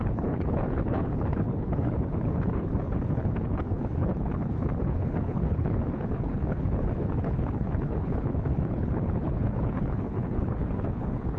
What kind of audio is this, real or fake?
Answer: fake